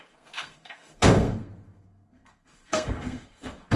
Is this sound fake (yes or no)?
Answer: yes